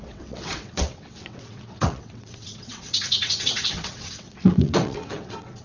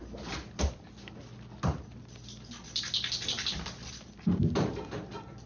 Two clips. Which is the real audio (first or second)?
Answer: second